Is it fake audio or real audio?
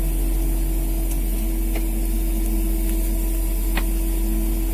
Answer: real